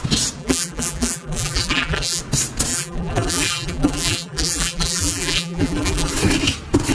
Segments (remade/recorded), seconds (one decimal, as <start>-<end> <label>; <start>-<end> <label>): 0.0-0.4 recorded; 0.4-2.2 remade; 2.2-2.7 recorded; 2.7-6.1 remade; 6.1-6.9 recorded